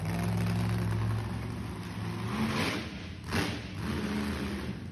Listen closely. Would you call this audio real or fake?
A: real